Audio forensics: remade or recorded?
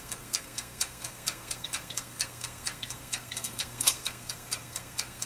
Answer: remade